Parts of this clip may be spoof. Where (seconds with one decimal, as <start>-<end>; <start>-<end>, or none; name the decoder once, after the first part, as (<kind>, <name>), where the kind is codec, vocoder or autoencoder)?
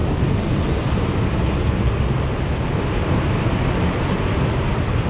none